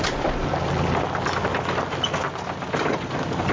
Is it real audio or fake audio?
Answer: real